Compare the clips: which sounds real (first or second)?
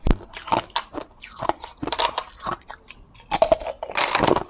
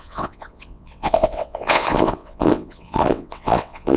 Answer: first